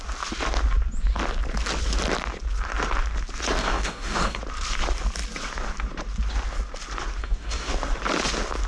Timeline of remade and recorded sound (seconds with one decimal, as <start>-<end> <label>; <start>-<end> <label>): 0.0-3.6 recorded; 3.6-4.4 remade; 4.4-7.2 recorded; 7.2-7.7 remade; 7.7-8.7 recorded